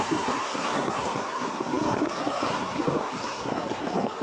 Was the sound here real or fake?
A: fake